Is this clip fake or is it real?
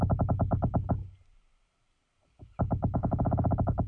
real